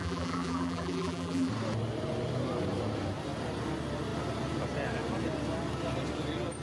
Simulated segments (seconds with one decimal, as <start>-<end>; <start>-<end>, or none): 0.0-1.5